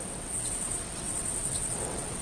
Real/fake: fake